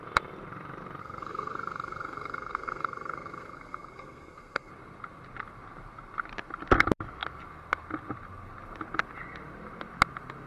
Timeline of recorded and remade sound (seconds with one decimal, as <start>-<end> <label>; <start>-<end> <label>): 0.0-1.0 recorded; 1.0-4.7 remade; 4.7-10.5 recorded